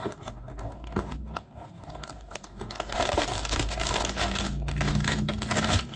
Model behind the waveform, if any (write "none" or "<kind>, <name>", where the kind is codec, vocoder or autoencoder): codec, DAC